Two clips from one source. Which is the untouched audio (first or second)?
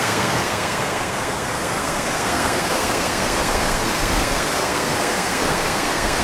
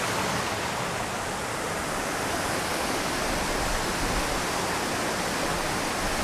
second